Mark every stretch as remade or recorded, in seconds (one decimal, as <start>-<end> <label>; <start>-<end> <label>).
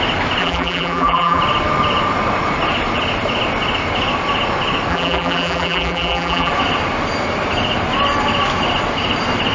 0.0-0.4 recorded; 0.4-1.4 remade; 1.4-4.9 recorded; 4.9-6.5 remade; 6.5-9.5 recorded